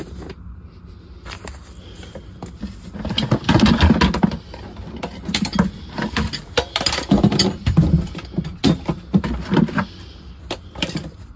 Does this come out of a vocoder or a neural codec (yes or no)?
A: no